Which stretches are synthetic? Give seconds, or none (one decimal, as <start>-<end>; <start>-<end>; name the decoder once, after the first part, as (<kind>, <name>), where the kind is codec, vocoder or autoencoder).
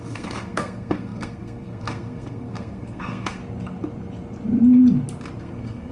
0.0-3.4 (codec, SNAC); 5.4-5.9